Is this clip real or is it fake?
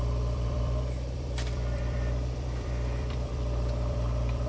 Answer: fake